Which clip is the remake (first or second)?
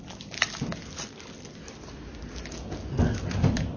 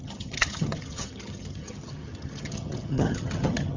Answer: second